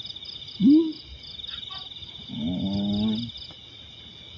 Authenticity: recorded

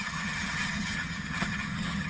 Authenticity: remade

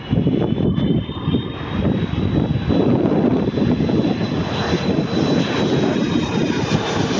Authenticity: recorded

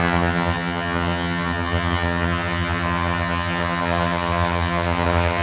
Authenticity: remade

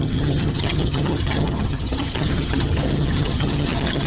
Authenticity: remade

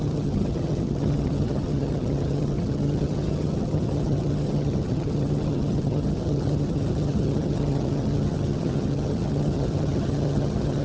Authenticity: remade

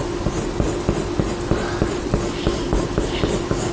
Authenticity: recorded